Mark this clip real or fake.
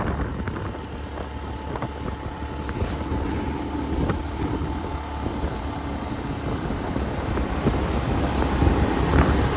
real